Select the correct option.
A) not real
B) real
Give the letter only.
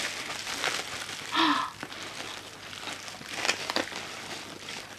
B